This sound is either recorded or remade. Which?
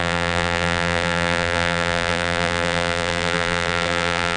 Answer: remade